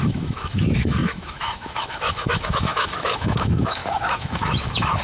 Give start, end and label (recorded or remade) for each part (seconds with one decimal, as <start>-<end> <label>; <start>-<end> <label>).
0.0-5.0 remade

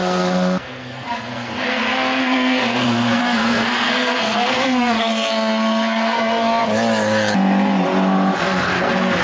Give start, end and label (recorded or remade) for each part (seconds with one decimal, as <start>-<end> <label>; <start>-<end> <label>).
0.0-6.6 remade; 6.6-8.4 recorded; 8.4-9.2 remade

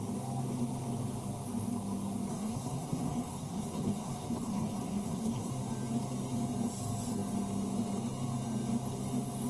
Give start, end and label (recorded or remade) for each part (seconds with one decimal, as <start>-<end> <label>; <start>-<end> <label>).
0.0-2.3 recorded; 2.3-5.5 remade; 5.5-9.5 recorded

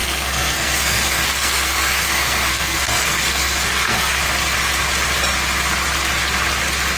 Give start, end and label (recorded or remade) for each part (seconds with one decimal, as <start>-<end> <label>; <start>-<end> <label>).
0.0-4.2 remade; 4.2-7.0 recorded

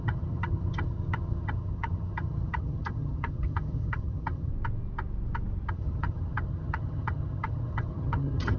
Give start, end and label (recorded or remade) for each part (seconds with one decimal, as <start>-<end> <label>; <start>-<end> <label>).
0.0-4.5 remade; 4.5-5.7 recorded; 5.7-8.6 remade